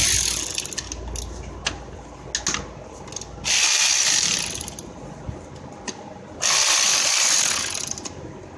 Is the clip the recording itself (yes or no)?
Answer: yes